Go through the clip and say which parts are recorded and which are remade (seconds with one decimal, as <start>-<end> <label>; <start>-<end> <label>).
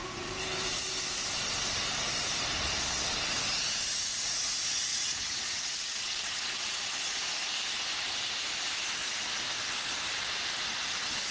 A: 0.0-4.9 recorded; 4.9-6.9 remade; 6.9-11.3 recorded